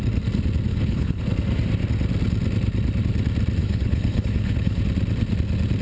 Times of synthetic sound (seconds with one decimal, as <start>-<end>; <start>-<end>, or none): 0.7-1.2; 3.6-4.8